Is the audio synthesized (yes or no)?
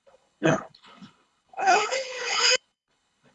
yes